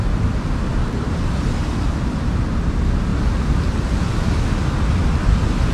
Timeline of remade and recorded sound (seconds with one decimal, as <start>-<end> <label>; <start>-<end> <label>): 0.0-0.8 recorded; 0.8-1.6 remade; 1.6-5.7 recorded

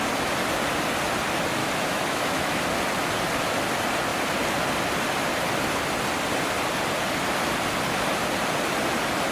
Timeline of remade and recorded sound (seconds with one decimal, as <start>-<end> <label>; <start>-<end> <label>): 0.0-1.6 recorded; 1.6-2.6 remade; 2.6-9.3 recorded

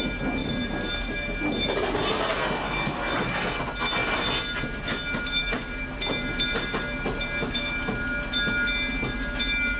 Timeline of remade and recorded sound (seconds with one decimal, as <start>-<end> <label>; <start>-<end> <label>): 0.0-9.8 recorded

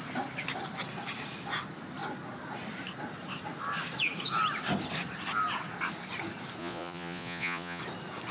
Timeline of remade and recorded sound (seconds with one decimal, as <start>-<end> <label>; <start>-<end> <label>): 0.0-6.6 recorded; 6.6-7.8 remade; 7.8-8.3 recorded

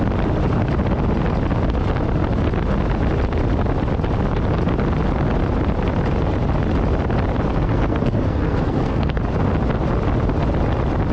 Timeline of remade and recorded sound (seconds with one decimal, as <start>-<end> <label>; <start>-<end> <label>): 0.0-7.5 recorded; 7.5-9.2 remade; 9.2-11.1 recorded

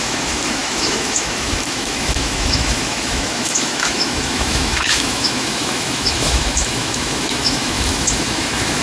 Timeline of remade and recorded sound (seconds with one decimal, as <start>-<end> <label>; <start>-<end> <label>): 0.0-8.8 remade

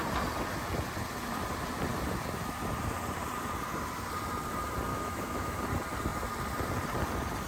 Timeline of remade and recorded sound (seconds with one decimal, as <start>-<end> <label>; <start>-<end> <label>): 0.0-4.9 recorded; 4.9-5.6 remade; 5.6-7.5 recorded